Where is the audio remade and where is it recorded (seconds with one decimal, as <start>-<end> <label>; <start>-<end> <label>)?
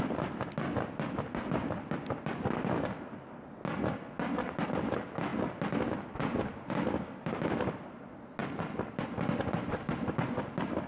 0.0-10.9 recorded